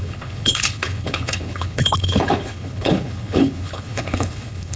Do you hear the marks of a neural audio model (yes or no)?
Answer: yes